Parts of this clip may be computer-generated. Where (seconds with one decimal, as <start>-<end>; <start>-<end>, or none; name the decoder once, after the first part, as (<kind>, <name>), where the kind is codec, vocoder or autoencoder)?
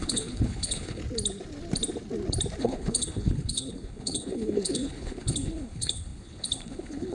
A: 0.0-1.0 (codec, HILCodec); 2.6-7.1